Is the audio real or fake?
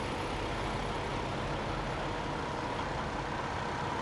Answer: real